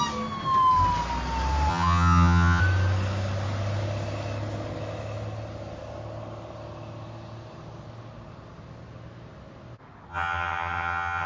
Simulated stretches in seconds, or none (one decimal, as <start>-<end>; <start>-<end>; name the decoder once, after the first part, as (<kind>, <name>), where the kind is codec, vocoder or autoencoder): 1.7-2.6 (vocoder, HiFi-GAN); 10.1-11.3